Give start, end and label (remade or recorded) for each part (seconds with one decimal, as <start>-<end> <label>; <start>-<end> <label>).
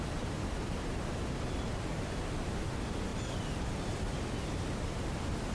0.0-1.9 recorded; 1.9-2.6 remade; 2.6-3.1 recorded; 3.1-3.8 remade; 3.8-5.5 recorded